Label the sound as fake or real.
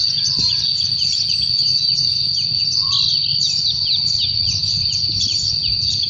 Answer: real